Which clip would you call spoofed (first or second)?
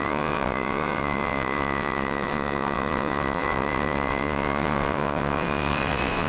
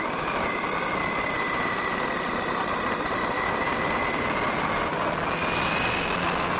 first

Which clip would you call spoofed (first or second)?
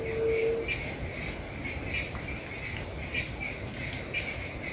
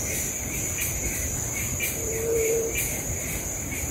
second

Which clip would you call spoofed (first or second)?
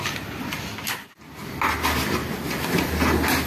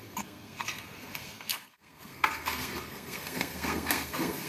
second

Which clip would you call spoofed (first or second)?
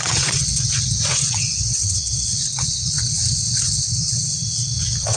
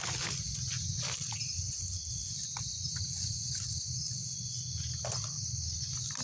first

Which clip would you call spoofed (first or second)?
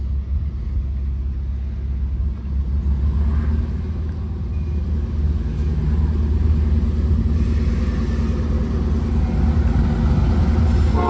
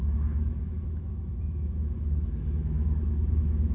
second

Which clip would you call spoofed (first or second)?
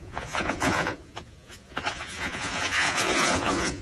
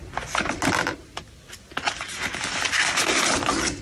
first